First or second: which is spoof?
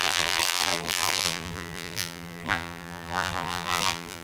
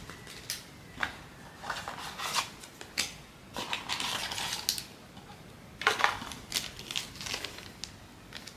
first